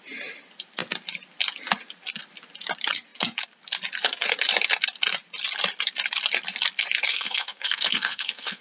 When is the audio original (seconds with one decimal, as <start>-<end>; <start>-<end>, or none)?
0.0-7.1